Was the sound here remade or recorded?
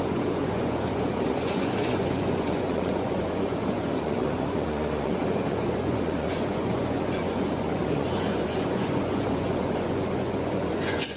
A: remade